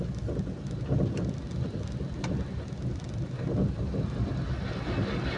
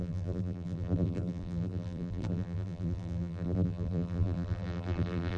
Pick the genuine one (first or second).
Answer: first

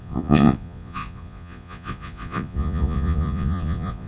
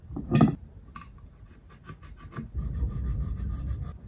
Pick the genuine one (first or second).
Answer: second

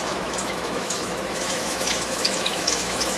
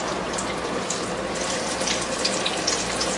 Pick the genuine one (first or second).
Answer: second